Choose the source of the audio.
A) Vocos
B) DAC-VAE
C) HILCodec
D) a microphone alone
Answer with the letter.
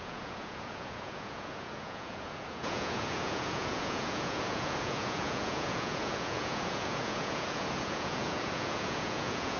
A